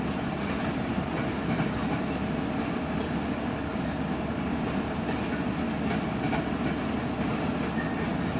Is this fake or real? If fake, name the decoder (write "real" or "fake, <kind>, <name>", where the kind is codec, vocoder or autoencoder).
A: real